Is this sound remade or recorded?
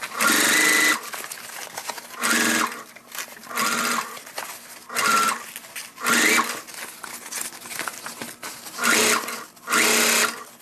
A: recorded